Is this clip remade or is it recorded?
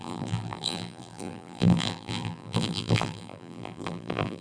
remade